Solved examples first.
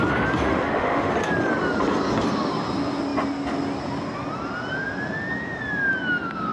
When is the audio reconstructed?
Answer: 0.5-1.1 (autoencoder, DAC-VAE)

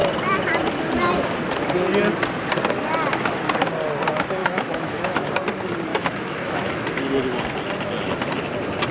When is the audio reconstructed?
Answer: 4.4-5.3 (autoencoder, DAC-VAE); 5.9-6.8